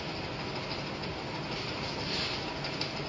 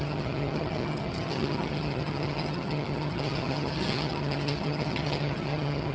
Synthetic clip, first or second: second